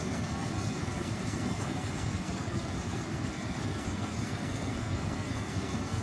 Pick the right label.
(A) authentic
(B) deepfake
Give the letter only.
B